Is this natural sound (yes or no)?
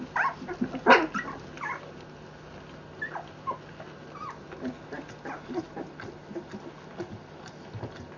yes